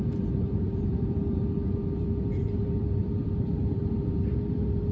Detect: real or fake fake